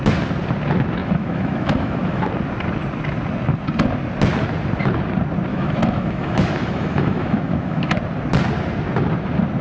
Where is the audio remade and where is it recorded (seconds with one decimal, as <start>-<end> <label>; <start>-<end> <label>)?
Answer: 0.0-1.0 recorded; 1.0-2.3 remade; 2.3-5.5 recorded; 5.5-7.9 remade; 7.9-9.6 recorded